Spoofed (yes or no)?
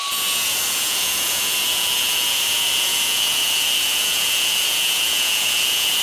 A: yes